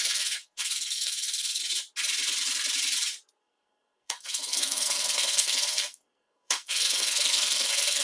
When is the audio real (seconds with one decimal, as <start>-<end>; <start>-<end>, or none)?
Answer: 1.6-3.4